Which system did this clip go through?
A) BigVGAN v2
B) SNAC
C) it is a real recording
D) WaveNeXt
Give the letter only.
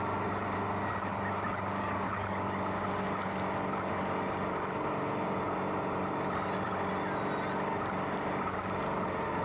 C